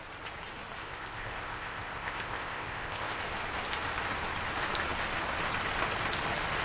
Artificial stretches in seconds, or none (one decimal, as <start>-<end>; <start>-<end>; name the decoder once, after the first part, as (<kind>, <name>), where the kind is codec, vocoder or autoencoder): 0.8-3.2 (codec, ZipCodec)